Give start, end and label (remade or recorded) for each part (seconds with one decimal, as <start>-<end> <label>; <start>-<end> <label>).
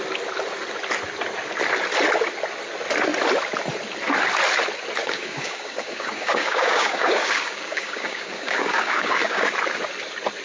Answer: 0.0-5.0 recorded; 5.0-9.5 remade; 9.5-10.4 recorded